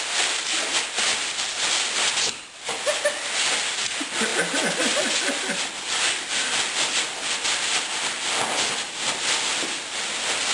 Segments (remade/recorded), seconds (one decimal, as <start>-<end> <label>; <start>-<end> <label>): 0.0-10.5 recorded

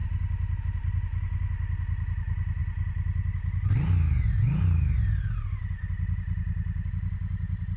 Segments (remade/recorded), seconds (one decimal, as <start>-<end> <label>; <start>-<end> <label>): 0.0-7.8 recorded

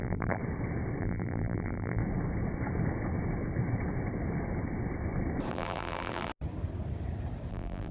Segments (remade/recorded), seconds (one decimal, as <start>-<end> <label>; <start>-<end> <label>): 0.0-0.4 remade; 0.4-1.0 recorded; 1.0-2.0 remade; 2.0-5.5 recorded; 5.5-6.3 remade; 6.3-7.5 recorded; 7.5-7.9 remade

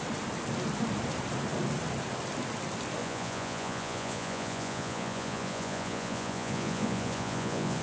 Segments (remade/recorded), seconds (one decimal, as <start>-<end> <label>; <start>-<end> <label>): 0.0-3.0 recorded; 3.0-7.8 remade

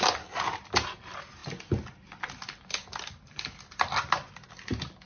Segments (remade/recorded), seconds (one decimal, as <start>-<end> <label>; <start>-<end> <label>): 0.0-5.1 recorded

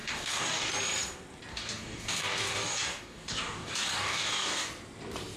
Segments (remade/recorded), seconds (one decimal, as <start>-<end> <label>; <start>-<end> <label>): 0.0-0.7 remade; 0.7-1.5 recorded; 1.5-4.7 remade; 4.7-5.4 recorded

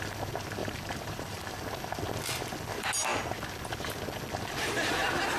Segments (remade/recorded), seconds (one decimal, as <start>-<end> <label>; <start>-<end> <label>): 0.0-0.6 recorded; 0.6-1.6 remade; 1.6-5.4 recorded

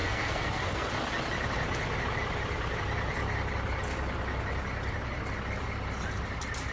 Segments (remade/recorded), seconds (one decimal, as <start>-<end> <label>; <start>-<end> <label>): 0.0-0.9 remade; 0.9-6.7 recorded